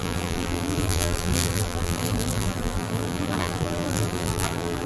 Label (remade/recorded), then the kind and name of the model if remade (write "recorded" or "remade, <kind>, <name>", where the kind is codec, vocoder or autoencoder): remade, vocoder, BigVGAN v2